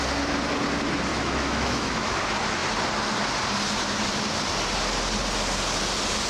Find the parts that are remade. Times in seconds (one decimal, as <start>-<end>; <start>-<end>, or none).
1.1-2.2